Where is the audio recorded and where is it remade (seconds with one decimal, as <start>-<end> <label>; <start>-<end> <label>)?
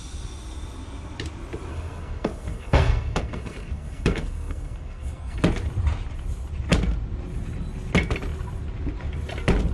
0.0-1.7 recorded; 1.7-5.4 remade; 5.4-9.7 recorded